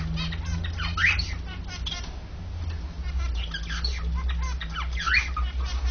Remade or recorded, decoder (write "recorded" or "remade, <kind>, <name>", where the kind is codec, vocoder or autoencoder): recorded